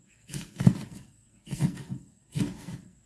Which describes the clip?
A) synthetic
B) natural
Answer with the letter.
A